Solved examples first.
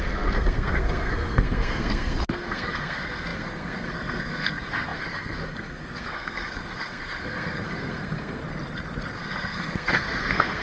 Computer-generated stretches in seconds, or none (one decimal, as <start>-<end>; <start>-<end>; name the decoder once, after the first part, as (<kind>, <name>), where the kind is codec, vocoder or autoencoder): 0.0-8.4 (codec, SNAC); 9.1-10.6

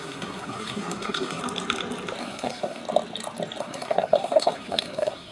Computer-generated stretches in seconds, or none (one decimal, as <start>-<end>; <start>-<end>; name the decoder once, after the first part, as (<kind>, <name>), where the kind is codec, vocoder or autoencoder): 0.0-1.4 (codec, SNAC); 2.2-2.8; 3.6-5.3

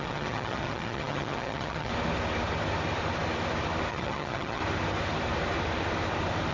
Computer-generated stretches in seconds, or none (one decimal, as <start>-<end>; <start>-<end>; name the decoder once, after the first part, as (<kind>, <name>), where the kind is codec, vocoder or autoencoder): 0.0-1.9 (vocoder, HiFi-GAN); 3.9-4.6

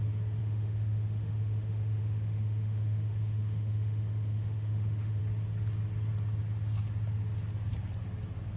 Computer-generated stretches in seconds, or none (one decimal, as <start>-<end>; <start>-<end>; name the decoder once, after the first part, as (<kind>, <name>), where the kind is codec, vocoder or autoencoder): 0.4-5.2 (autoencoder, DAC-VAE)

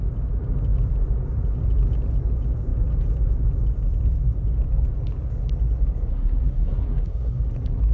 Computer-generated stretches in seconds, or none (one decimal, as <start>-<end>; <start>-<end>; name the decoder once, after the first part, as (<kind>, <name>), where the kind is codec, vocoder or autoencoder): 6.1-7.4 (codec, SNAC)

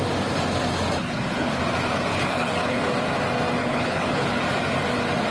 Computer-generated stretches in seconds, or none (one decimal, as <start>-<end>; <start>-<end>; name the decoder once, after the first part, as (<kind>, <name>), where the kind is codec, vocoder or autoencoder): 1.0-1.6 (codec, HILCodec); 2.1-2.8; 3.6-4.4